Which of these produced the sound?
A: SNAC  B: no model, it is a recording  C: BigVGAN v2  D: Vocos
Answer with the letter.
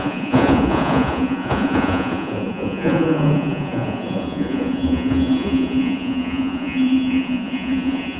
D